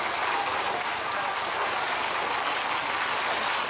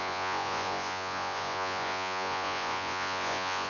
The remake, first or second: second